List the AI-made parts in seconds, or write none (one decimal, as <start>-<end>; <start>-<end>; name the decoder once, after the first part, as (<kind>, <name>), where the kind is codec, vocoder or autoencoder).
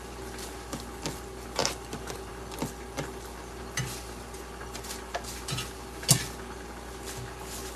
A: none